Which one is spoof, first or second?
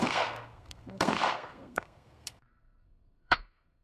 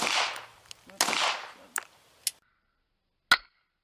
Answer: first